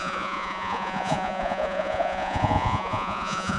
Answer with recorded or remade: remade